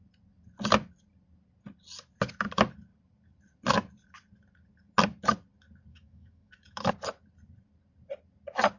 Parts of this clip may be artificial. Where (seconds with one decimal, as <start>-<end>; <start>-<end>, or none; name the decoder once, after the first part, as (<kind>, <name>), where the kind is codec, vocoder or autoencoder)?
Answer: 5.9-6.9 (autoencoder, DAC-VAE)